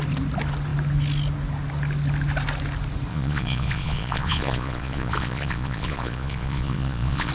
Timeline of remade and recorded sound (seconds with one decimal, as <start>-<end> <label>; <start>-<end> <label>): 0.0-3.1 recorded; 3.1-7.3 remade